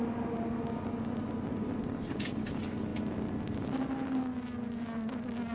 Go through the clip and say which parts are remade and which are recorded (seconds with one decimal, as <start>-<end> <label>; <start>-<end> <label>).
0.0-5.5 recorded